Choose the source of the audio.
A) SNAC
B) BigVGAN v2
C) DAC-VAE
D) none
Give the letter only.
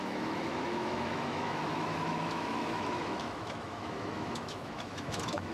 C